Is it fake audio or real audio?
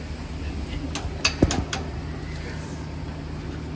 real